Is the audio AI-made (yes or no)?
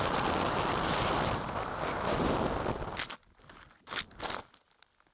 no